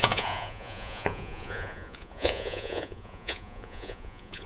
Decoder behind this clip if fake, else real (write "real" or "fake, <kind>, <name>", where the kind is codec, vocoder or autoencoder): fake, vocoder, Vocos